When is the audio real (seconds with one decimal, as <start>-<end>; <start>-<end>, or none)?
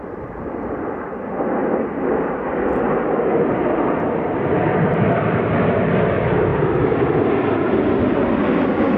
0.0-4.6; 6.1-6.5; 7.2-9.0